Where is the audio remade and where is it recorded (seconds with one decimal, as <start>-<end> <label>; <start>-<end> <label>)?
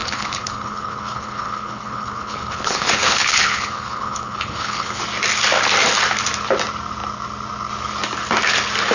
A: 0.0-5.0 remade; 5.0-8.9 recorded